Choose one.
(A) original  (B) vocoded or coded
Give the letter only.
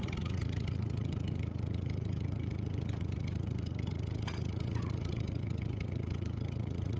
B